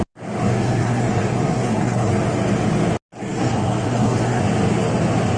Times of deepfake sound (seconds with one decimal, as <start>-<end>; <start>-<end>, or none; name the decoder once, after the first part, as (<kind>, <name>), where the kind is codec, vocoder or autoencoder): 0.4-2.1 (codec, SNAC); 3.2-4.4